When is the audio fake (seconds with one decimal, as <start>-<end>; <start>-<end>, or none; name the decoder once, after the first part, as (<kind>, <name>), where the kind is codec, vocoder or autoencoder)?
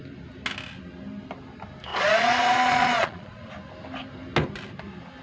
1.9-3.5 (vocoder, Vocos)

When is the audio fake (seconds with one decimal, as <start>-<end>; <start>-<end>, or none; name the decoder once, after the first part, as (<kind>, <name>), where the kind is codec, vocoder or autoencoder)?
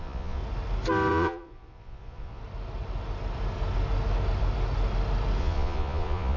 0.0-0.4 (vocoder, Vocos); 1.1-2.4; 5.4-6.4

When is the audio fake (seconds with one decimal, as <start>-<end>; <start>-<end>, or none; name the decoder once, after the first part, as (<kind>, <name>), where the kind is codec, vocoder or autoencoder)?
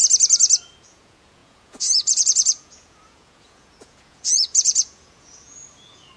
0.6-6.2 (vocoder, Vocos)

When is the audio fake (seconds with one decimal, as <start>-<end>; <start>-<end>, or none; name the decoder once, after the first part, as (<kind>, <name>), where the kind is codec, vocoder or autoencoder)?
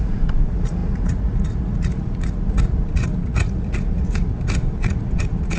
0.0-5.6 (vocoder, Vocos)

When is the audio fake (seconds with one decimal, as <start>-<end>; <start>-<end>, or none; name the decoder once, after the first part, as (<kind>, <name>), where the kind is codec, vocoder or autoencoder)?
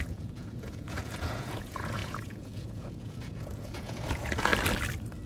0.0-4.5 (vocoder, Vocos)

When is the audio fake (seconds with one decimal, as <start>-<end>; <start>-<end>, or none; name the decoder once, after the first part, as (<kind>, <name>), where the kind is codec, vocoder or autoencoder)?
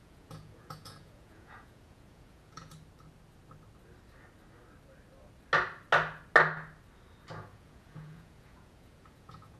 0.0-2.7 (vocoder, Vocos); 7.3-9.6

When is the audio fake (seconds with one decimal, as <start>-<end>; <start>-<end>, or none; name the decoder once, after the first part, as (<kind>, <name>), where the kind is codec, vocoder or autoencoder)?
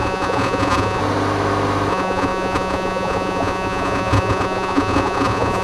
0.0-1.0 (vocoder, Vocos); 1.9-5.6